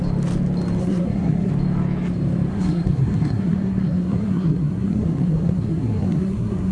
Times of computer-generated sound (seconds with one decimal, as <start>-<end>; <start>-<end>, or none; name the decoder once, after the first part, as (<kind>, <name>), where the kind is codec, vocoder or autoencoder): 0.8-1.5 (codec, SNAC); 2.5-6.7